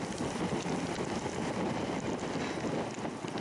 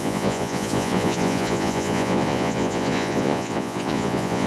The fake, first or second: second